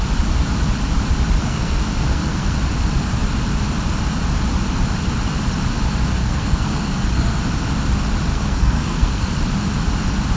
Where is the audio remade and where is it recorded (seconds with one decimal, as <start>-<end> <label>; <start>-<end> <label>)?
0.0-1.4 recorded; 1.4-2.6 remade; 2.6-6.2 recorded; 6.2-7.4 remade; 7.4-8.3 recorded; 8.3-9.3 remade; 9.3-10.4 recorded